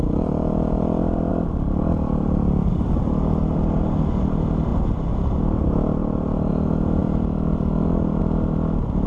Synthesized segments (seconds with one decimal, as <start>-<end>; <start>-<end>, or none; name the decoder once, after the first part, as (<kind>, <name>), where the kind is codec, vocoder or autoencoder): 1.3-2.7 (vocoder, BigVGAN v2); 6.0-6.5; 7.0-8.2